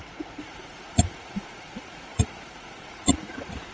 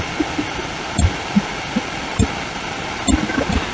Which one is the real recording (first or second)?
second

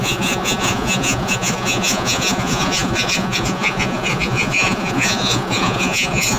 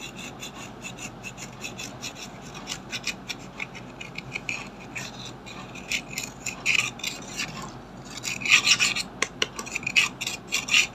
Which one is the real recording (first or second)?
second